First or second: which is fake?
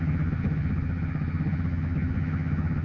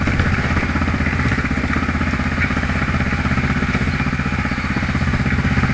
first